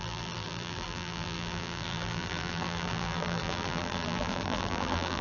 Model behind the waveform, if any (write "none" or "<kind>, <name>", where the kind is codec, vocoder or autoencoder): vocoder, BigVGAN v2